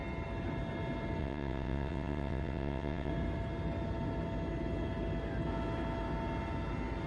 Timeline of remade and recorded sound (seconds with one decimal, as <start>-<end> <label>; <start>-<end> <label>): 0.0-1.2 recorded; 1.2-3.1 remade; 3.1-7.1 recorded